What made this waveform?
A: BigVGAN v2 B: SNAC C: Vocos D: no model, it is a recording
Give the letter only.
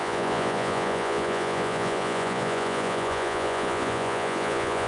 C